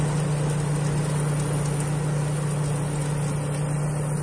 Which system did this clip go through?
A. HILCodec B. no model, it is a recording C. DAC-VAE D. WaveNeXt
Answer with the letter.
B